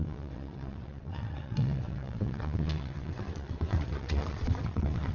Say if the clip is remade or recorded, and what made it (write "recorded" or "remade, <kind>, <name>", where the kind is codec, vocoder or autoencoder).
remade, vocoder, WaveNeXt